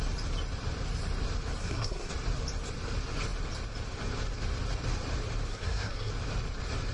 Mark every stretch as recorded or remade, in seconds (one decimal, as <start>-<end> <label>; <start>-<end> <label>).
0.0-1.6 recorded; 1.6-2.1 remade; 2.1-5.5 recorded; 5.5-6.1 remade; 6.1-6.9 recorded